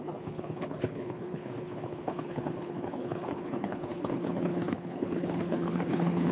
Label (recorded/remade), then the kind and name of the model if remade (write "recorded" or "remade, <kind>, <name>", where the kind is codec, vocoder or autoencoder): remade, codec, HILCodec